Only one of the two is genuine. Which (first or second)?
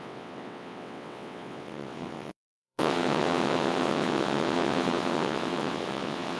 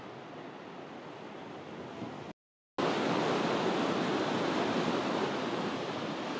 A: second